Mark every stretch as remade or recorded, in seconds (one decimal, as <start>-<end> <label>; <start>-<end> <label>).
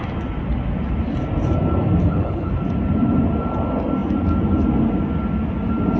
0.0-2.0 recorded; 2.0-2.5 remade; 2.5-6.0 recorded